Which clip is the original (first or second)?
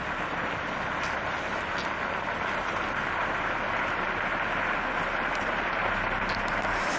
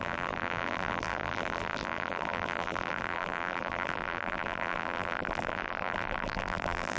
first